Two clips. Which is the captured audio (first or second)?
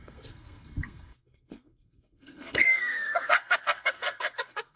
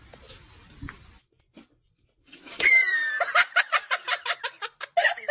second